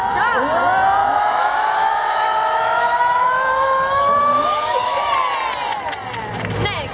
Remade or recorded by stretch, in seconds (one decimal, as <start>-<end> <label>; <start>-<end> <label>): 0.0-1.0 recorded; 1.0-5.1 remade; 5.1-6.9 recorded